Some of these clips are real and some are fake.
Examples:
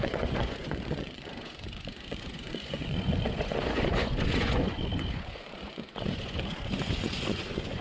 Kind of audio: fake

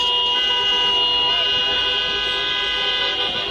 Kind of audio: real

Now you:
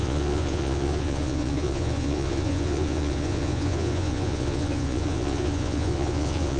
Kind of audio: fake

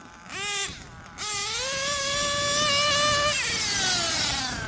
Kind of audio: real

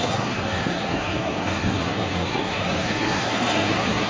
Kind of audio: fake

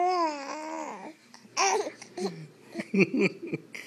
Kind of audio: real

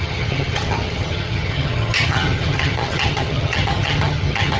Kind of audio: fake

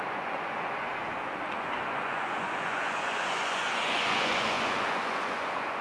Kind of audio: fake